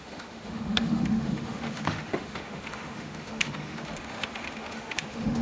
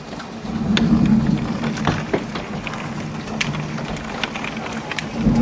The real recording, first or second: second